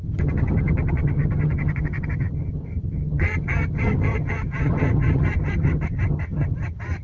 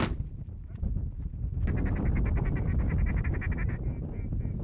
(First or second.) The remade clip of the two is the first